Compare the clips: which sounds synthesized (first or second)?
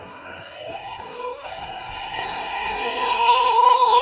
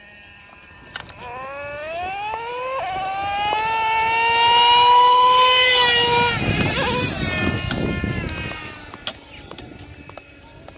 first